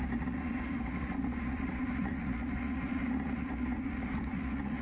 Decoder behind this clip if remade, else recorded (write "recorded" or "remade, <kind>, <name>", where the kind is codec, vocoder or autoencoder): remade, vocoder, Vocos